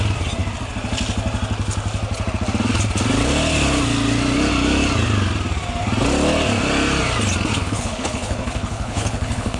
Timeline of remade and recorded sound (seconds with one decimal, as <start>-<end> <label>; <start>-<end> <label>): 0.0-7.5 recorded; 7.5-9.6 remade